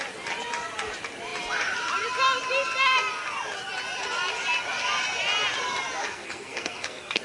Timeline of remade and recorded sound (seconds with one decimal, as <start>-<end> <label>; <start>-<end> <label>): 0.0-6.0 recorded; 6.0-7.2 remade